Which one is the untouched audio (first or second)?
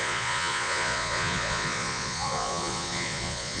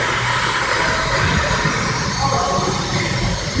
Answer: second